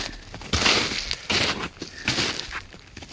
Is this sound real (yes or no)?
yes